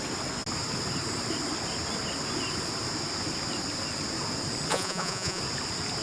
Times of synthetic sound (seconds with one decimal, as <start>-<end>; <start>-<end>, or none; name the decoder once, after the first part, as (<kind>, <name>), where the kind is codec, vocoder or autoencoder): 4.7-5.4 (vocoder, Vocos)